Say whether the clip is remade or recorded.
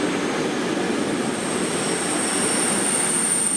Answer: recorded